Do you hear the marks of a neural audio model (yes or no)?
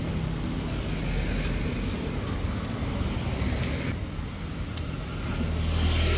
no